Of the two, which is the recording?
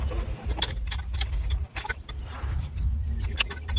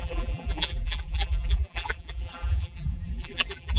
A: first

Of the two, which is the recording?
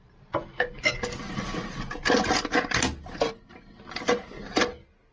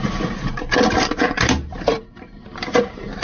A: first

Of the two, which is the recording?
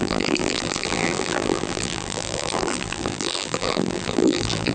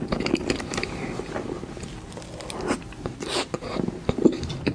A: second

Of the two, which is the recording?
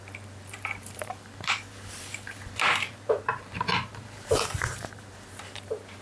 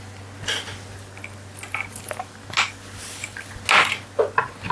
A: second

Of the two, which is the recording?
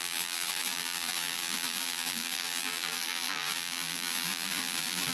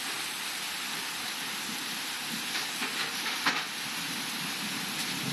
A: second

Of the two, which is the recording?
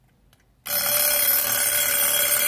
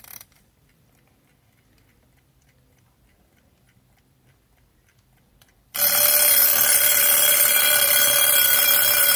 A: first